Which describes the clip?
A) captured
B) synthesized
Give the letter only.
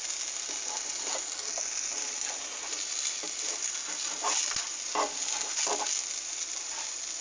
A